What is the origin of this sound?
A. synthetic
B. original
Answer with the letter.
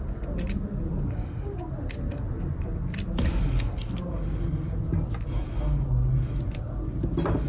B